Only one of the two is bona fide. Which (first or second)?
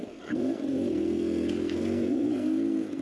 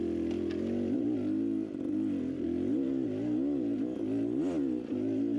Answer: second